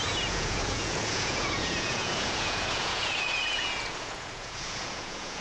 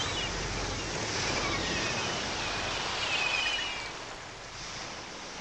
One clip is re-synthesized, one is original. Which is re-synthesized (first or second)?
first